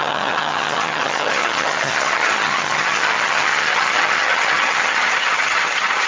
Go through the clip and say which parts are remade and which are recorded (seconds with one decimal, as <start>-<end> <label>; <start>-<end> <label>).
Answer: 0.0-6.1 remade